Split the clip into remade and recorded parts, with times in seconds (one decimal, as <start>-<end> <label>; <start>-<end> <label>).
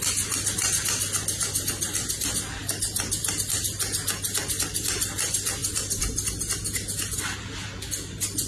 0.0-2.6 recorded; 2.6-3.4 remade; 3.4-8.5 recorded